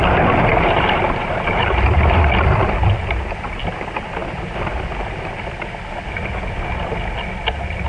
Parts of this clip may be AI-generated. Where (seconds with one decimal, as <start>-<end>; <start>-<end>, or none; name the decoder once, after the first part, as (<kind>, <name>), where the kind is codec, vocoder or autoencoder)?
0.5-1.6 (vocoder, BigVGAN v2)